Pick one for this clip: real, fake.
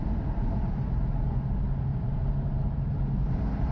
fake